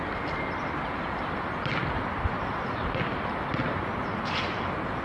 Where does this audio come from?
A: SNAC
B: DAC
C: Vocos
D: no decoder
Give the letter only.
D